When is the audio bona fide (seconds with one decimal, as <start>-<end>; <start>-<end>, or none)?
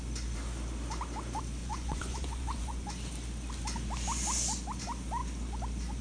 0.0-1.6; 2.9-6.0